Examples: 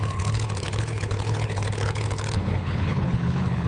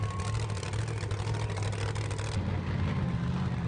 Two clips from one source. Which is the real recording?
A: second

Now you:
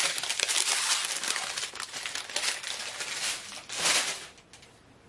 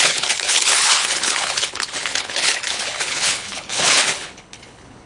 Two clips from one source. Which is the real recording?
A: first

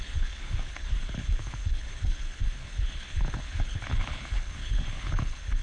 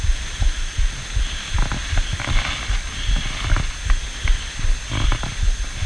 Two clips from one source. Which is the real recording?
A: second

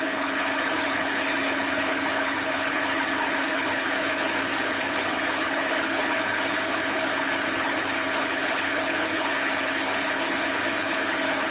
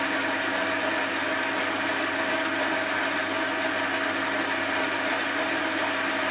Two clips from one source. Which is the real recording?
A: second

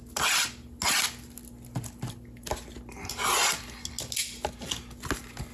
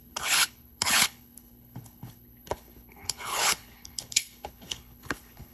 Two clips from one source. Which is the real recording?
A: first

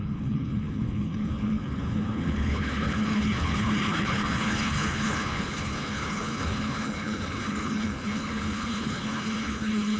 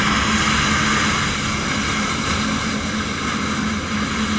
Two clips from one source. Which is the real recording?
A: second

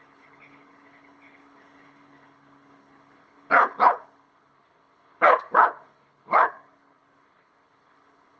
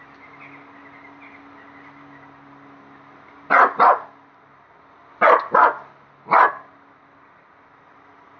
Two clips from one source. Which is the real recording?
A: second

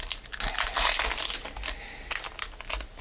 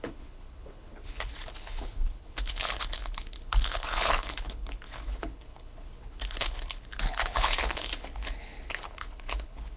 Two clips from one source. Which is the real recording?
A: first